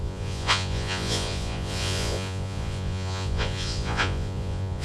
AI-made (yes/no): yes